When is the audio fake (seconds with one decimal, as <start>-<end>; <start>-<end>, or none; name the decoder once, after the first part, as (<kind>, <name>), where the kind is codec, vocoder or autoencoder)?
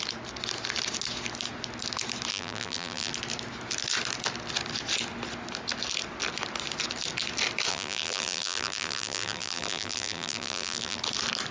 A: 2.3-3.1 (vocoder, BigVGAN v2); 7.7-11.0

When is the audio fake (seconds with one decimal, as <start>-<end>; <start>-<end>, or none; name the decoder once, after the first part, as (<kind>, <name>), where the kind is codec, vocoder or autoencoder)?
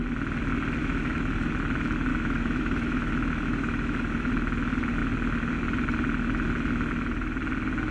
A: 0.8-1.5 (autoencoder, DAC-VAE); 2.1-4.3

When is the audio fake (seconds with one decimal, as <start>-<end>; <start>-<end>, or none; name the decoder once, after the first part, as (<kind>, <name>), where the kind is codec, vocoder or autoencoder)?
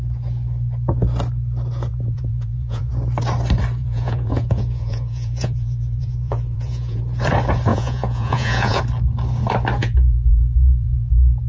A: 1.9-2.9 (vocoder, Vocos); 3.8-7.0; 7.7-8.8; 9.8-11.1